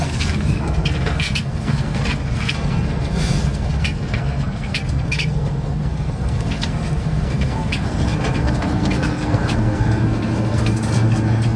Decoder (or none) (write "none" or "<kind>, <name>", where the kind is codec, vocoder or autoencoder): codec, SNAC